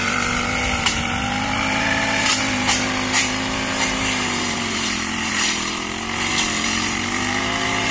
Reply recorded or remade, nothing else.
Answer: remade